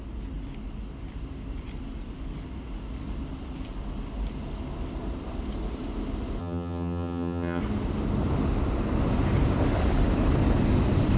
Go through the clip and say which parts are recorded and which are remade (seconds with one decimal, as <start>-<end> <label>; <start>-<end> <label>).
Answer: 0.0-6.4 recorded; 6.4-7.6 remade; 7.6-11.2 recorded